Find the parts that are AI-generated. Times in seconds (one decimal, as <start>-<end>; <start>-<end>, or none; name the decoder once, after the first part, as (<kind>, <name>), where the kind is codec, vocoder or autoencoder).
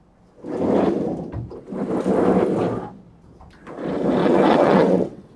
4.2-5.4 (vocoder, WaveNeXt)